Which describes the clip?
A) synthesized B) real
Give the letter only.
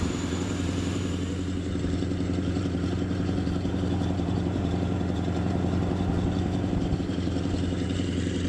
A